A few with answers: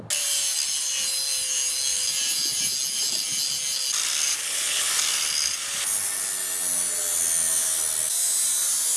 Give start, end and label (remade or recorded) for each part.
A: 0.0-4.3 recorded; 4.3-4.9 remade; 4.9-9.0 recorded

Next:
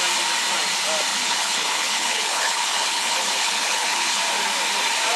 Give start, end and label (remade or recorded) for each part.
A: 0.0-1.1 recorded; 1.1-4.2 remade; 4.2-5.2 recorded

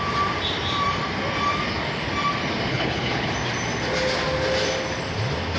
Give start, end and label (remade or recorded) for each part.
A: 0.0-2.7 recorded; 2.7-3.3 remade; 3.3-5.6 recorded